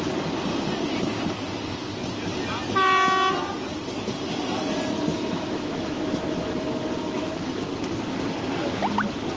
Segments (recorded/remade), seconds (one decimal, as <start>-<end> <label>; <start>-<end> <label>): 0.0-5.1 recorded; 5.1-7.8 remade; 7.8-9.4 recorded